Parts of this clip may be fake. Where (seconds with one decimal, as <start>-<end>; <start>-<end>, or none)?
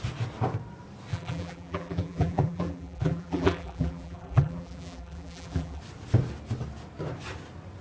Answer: 1.1-5.8